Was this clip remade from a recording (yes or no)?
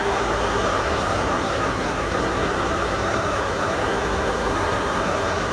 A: yes